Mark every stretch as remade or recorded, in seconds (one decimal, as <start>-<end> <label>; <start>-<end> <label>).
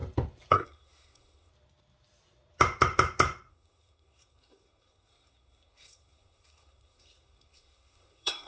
0.0-0.5 recorded; 0.5-1.5 remade; 1.5-3.5 recorded; 3.5-8.5 remade